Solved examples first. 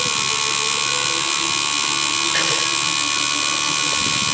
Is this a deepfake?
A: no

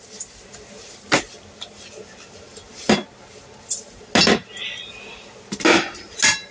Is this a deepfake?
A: no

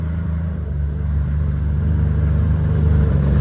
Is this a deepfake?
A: yes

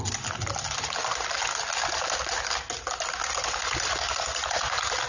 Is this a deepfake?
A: no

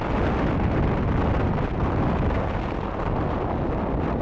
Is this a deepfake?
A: no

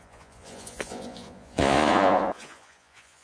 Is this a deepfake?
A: yes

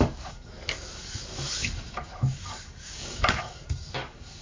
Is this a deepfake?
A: yes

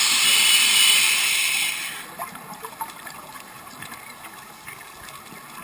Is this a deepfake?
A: no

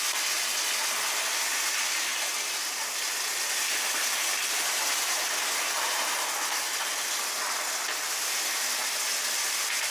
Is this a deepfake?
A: no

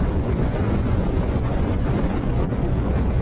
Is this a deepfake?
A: yes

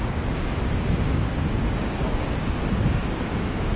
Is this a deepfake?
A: yes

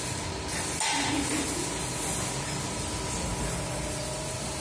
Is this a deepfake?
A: no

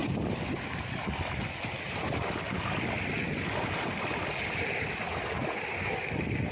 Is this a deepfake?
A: no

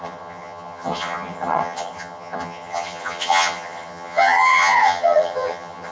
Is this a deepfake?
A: yes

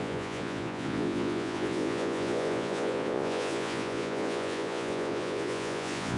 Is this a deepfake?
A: yes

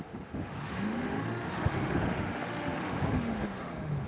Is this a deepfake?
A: yes